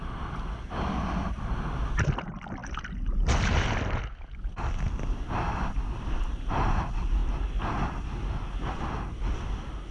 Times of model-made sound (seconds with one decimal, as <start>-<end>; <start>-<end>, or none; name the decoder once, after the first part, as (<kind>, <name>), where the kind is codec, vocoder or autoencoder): none